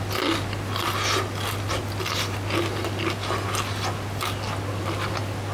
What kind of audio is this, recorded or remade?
recorded